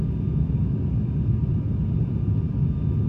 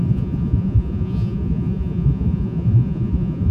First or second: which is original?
first